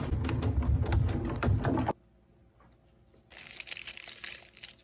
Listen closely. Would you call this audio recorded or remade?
recorded